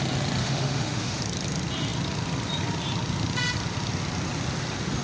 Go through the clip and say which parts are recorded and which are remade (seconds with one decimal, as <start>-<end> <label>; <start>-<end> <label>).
0.0-0.4 recorded; 0.4-1.2 remade; 1.2-5.0 recorded